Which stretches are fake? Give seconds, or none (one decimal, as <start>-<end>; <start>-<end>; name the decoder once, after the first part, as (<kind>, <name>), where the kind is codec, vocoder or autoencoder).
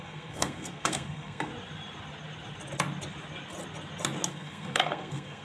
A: 0.0-1.5 (codec, SNAC); 4.3-5.4